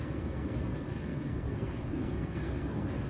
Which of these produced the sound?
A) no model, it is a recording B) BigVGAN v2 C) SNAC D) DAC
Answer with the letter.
C